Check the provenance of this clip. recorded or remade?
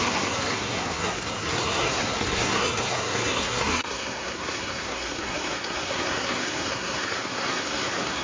remade